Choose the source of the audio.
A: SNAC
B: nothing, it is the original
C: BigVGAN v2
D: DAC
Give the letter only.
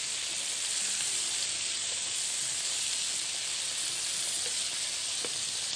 B